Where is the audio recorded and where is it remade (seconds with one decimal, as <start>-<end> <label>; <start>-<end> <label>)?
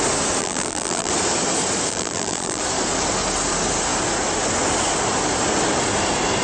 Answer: 0.0-0.4 recorded; 0.4-1.1 remade; 1.1-1.9 recorded; 1.9-2.6 remade; 2.6-6.4 recorded